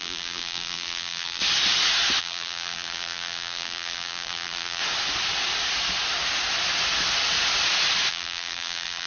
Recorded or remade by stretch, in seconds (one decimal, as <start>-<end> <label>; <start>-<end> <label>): 0.0-1.4 remade; 1.4-2.2 recorded; 2.2-4.8 remade; 4.8-8.1 recorded; 8.1-9.1 remade